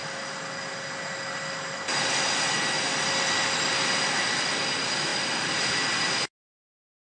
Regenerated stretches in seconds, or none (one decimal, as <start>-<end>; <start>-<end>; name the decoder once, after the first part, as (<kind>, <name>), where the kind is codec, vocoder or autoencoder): none